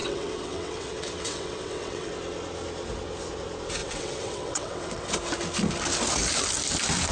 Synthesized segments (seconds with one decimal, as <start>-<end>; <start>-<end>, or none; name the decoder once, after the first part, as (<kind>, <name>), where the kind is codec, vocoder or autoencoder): 0.0-2.1 (vocoder, WaveNeXt); 3.8-5.1